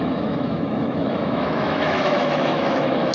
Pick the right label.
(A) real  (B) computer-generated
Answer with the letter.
B